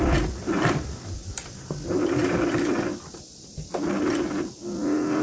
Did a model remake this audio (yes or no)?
no